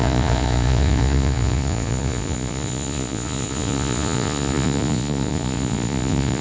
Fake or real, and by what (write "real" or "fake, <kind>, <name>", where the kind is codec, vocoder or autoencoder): fake, vocoder, Vocos